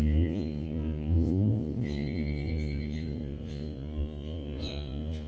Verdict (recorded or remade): remade